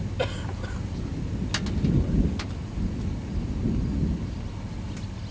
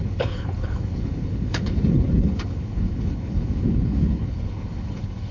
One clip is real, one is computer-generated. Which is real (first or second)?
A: first